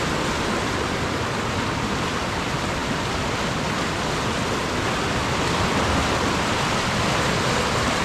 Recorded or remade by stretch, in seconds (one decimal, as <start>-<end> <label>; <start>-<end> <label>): 0.0-8.0 recorded